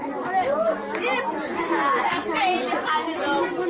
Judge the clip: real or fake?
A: real